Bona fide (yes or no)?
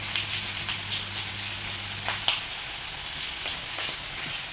yes